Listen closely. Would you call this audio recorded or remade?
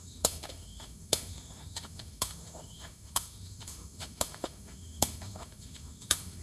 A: remade